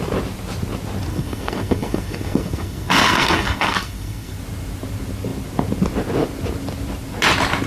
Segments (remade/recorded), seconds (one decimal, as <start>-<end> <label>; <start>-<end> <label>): 0.0-1.1 recorded; 1.1-4.4 remade; 4.4-7.7 recorded